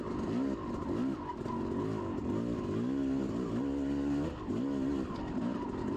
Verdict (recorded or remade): recorded